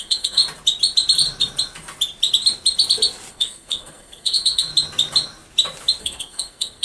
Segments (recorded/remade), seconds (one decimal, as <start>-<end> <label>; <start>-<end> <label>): 0.0-0.4 remade; 0.4-3.3 recorded; 3.3-4.7 remade; 4.7-6.0 recorded; 6.0-6.8 remade